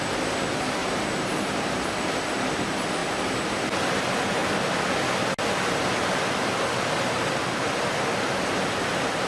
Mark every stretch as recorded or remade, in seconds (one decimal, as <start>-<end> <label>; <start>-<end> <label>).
0.0-0.8 recorded; 0.8-1.4 remade; 1.4-9.3 recorded